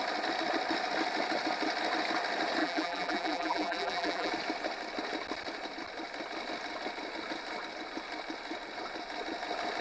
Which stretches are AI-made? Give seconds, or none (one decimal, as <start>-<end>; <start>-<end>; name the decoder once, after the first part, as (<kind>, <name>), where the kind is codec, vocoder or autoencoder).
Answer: 2.6-4.3 (vocoder, BigVGAN v2)